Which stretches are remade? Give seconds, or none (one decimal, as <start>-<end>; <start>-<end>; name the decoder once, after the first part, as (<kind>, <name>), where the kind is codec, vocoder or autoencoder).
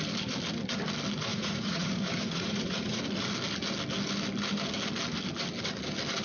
1.3-3.0 (vocoder, Vocos)